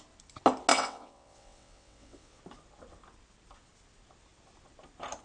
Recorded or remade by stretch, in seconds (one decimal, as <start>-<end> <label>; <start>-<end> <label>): 0.0-0.7 recorded; 0.7-2.4 remade; 2.4-5.2 recorded